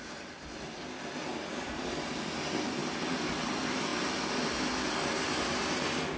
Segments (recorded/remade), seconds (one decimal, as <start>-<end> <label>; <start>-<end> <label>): 0.0-6.2 recorded